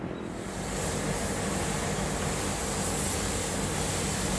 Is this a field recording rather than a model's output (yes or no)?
yes